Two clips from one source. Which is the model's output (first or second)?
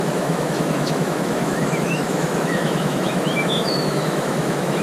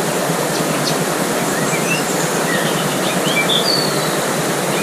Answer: first